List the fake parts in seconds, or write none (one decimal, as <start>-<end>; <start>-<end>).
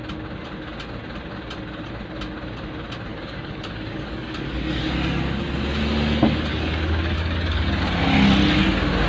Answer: 3.1-4.8; 6.5-7.8